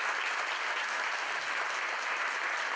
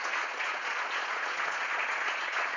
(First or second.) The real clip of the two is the first